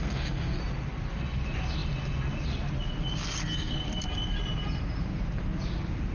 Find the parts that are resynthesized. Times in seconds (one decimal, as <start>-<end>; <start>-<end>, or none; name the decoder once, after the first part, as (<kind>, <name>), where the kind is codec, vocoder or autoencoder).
0.0-0.6 (codec, SNAC)